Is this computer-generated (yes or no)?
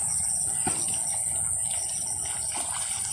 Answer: no